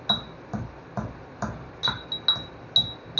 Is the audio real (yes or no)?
yes